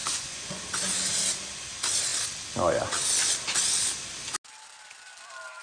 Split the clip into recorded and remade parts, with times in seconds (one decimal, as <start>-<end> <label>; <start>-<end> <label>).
0.0-0.6 remade; 0.6-5.6 recorded